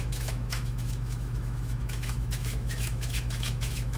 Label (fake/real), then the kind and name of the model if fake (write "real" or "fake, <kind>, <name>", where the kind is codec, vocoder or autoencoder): fake, autoencoder, DAC-VAE